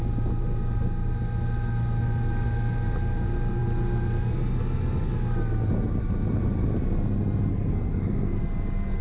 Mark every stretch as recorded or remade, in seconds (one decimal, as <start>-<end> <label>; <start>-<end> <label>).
0.0-7.5 recorded; 7.5-8.4 remade; 8.4-9.0 recorded